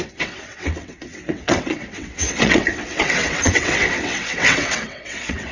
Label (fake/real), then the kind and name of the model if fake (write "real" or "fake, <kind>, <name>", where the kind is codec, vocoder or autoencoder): fake, vocoder, WaveNeXt